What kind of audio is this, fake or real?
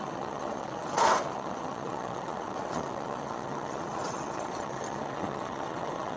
fake